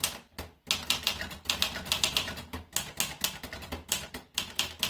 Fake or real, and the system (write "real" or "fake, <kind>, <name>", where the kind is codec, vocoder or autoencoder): real